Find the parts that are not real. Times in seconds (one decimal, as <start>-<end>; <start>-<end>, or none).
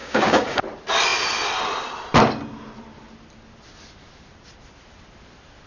0.0-0.6